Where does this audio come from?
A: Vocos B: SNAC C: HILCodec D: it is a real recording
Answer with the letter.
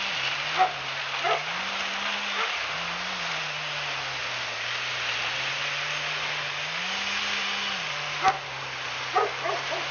D